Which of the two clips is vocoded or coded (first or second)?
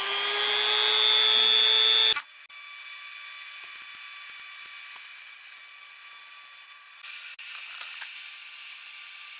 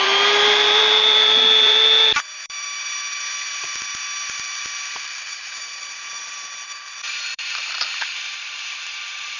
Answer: second